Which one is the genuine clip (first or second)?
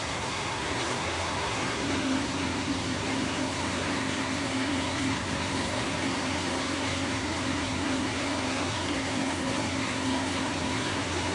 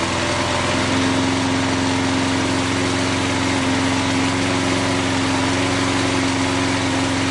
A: second